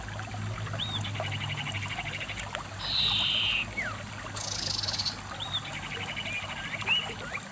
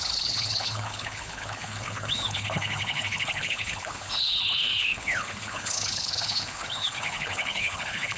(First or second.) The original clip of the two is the first